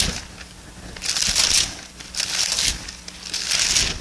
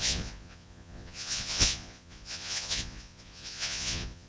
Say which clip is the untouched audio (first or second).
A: first